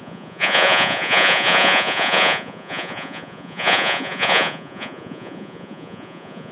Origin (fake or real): fake